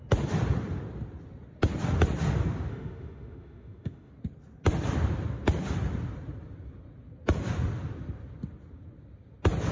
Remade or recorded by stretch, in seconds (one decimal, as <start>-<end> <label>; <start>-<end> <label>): 0.0-2.7 recorded; 2.7-4.1 remade; 4.1-9.7 recorded